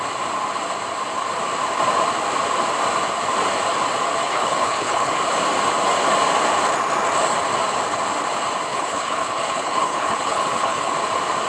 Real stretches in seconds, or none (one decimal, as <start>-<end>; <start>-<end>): 0.0-4.2; 5.2-8.7; 10.9-11.5